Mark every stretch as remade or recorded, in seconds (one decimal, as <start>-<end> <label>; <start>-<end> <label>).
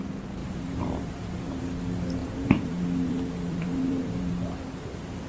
0.0-0.4 recorded; 0.4-1.6 remade; 1.6-2.2 recorded; 2.2-4.3 remade; 4.3-5.3 recorded